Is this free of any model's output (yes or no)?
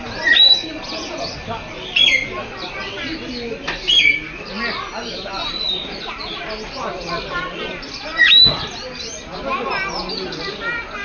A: yes